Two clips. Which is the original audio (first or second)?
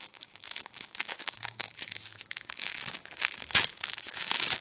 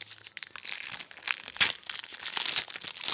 second